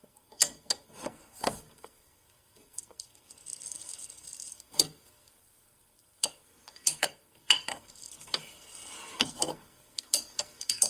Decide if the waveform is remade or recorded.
remade